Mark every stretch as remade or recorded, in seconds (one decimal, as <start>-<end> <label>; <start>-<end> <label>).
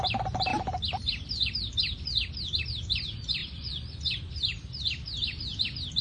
0.0-3.4 recorded; 3.4-4.3 remade; 4.3-6.0 recorded